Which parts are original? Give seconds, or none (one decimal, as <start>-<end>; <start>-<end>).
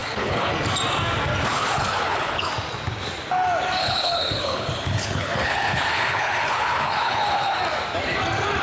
0.5-1.5; 2.5-3.8; 7.6-8.6